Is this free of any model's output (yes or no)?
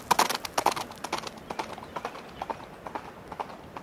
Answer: yes